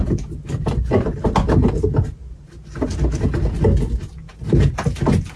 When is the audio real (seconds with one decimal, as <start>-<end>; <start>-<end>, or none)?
0.0-5.4